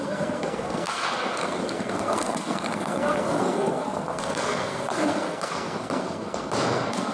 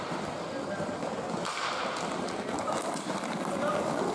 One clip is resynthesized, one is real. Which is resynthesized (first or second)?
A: first